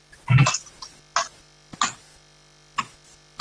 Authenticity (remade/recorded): recorded